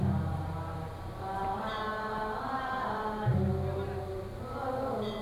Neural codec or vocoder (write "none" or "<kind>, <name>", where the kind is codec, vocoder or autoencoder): none